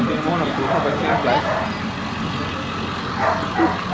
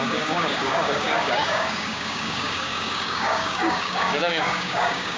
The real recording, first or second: first